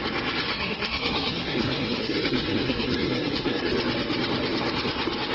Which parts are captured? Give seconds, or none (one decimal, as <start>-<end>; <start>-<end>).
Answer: 0.0-0.5; 3.7-5.3